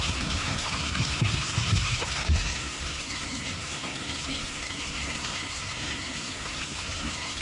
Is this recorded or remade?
remade